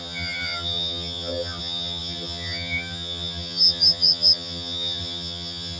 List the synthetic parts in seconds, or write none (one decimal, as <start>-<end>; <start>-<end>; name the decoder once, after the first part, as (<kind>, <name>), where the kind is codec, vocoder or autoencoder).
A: 0.0-5.8 (vocoder, HiFi-GAN)